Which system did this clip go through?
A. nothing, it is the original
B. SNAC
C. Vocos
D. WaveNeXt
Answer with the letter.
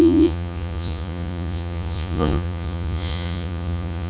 C